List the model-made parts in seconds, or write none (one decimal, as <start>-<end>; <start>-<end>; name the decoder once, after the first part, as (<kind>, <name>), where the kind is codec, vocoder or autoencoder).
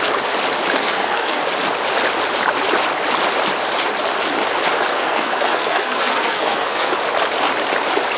0.8-1.4 (codec, SNAC); 4.9-6.9